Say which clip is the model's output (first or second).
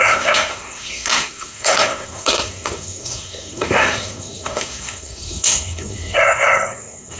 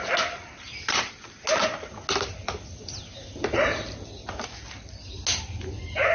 first